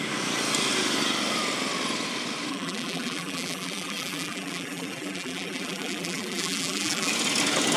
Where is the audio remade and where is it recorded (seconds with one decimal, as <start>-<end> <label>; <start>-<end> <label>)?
0.0-2.5 recorded; 2.5-7.1 remade; 7.1-7.8 recorded